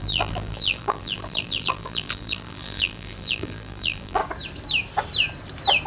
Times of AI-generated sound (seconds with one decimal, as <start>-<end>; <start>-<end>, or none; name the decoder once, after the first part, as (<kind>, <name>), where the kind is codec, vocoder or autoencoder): 0.0-4.2 (vocoder, BigVGAN v2)